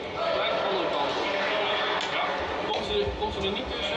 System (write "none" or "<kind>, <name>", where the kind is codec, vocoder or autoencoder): none